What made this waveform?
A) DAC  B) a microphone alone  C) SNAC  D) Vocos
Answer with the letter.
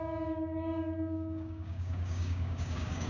A